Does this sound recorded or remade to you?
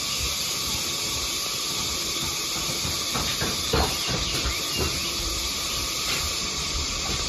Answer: remade